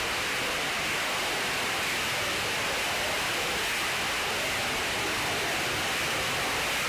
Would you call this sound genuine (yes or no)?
no